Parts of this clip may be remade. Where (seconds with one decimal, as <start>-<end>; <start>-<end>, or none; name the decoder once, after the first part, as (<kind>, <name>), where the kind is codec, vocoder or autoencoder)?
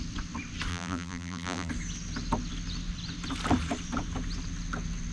0.7-1.7 (vocoder, BigVGAN v2)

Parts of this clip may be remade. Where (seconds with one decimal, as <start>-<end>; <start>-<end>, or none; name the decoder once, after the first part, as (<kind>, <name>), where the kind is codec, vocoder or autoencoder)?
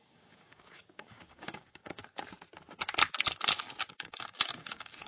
0.0-2.0 (codec, DAC); 3.9-5.1